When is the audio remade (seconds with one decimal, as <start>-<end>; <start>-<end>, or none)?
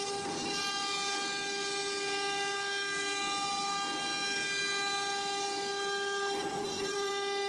6.4-7.1